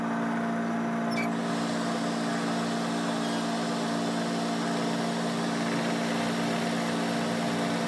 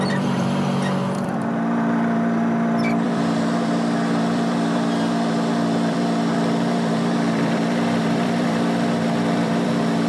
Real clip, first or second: first